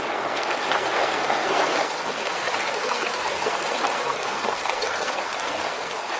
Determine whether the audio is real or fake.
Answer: fake